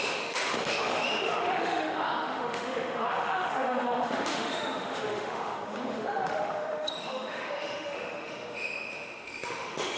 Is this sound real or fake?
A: fake